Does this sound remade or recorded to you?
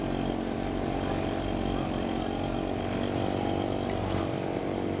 recorded